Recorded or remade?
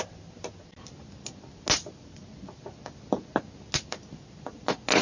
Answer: recorded